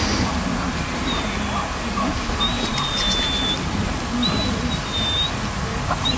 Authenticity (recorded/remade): recorded